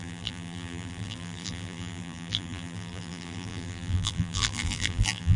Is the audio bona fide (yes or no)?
no